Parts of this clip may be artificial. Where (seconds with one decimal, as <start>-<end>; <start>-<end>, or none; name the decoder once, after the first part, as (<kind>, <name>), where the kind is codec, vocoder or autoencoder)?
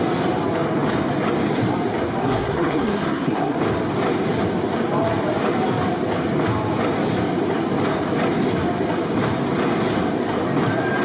2.2-3.6 (codec, SNAC)